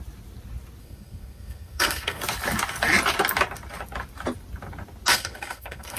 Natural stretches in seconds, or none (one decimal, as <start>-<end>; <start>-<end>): 0.0-0.8; 2.2-5.1